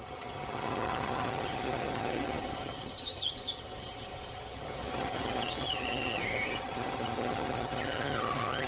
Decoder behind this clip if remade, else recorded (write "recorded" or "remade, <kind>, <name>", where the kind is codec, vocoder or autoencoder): remade, vocoder, HiFi-GAN